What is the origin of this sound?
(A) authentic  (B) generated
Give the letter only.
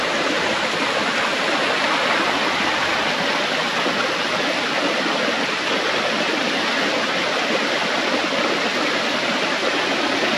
A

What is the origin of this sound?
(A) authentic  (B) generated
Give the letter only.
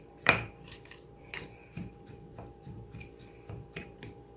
B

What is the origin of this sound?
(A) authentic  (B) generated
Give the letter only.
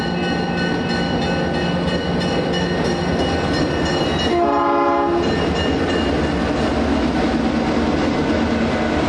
A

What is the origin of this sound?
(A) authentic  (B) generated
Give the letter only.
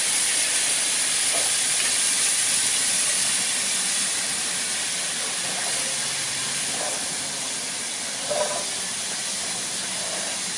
A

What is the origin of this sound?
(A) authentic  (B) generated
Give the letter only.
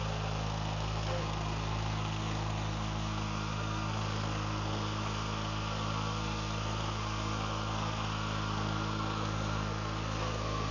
B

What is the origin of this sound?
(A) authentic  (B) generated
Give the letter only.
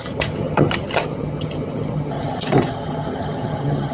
B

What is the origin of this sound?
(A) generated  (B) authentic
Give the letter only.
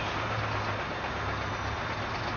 B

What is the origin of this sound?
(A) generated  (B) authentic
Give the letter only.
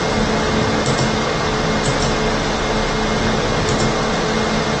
B